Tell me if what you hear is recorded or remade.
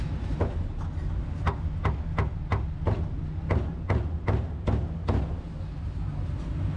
recorded